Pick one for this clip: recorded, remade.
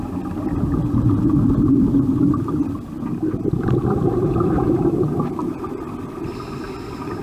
recorded